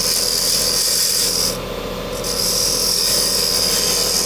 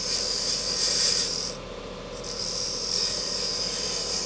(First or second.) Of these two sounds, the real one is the first